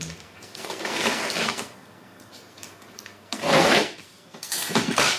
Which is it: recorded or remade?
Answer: remade